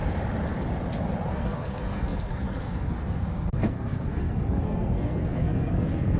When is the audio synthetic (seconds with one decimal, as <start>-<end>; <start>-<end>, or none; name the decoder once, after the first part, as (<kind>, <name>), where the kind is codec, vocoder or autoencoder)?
1.3-6.2 (codec, SNAC)